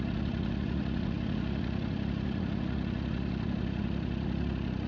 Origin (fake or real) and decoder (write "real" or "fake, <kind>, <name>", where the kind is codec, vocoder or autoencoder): fake, vocoder, Vocos